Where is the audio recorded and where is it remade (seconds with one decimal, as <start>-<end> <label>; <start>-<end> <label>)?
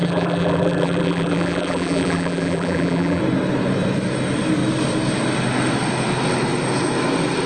0.0-3.2 remade; 3.2-7.5 recorded